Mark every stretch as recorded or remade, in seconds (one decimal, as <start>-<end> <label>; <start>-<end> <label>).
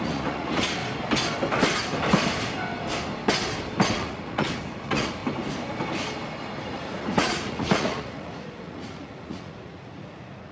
0.0-0.8 remade; 0.8-3.9 recorded; 3.9-5.2 remade; 5.2-6.6 recorded; 6.6-10.5 remade